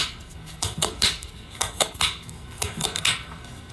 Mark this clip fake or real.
fake